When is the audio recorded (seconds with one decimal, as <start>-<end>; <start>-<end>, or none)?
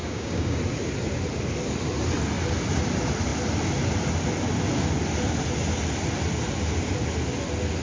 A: 0.6-7.8